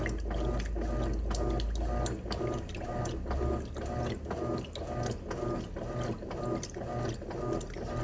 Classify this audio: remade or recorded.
recorded